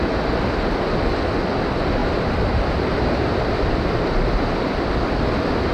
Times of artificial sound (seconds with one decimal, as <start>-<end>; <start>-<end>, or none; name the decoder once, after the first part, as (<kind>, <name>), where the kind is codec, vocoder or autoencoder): none